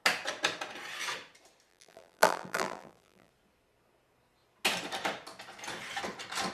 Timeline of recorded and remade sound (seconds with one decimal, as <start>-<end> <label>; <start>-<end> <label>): 0.0-1.7 recorded; 1.7-3.3 remade; 3.3-6.5 recorded